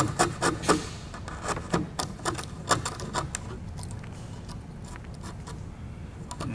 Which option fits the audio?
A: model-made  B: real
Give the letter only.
B